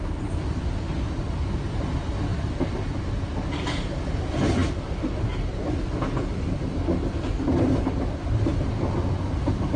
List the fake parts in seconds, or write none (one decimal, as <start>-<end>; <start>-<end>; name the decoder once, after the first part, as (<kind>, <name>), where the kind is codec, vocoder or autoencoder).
2.3-3.0 (vocoder, BigVGAN v2)